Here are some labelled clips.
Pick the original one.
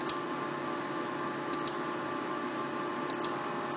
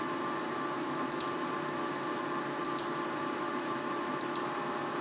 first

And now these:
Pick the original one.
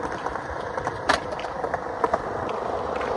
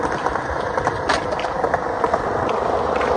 second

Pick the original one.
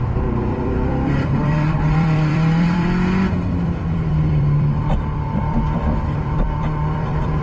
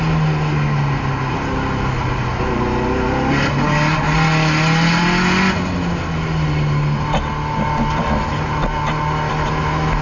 second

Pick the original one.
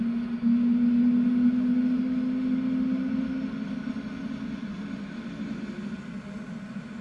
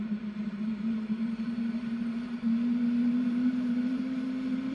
first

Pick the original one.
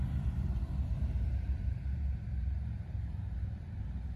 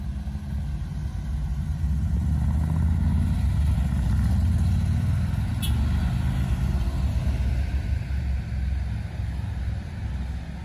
second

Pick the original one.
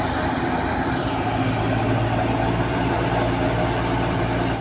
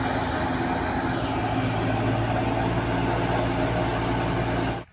second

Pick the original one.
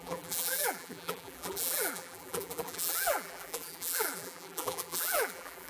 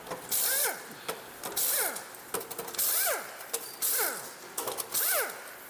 second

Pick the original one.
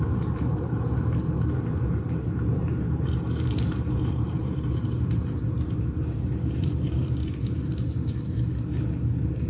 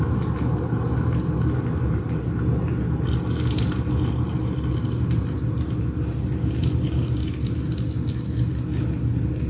second